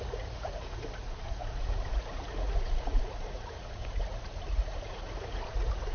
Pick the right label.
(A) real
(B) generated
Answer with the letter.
B